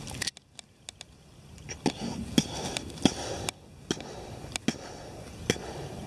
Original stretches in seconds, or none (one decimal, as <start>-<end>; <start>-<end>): 0.0-6.1